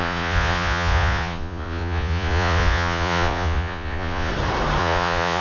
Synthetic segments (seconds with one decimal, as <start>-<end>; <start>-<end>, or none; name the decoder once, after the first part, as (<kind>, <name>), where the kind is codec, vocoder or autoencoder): 0.0-4.3 (vocoder, Vocos); 4.8-5.4